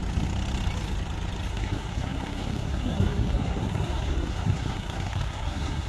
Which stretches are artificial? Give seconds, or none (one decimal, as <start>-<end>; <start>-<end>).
1.5-5.9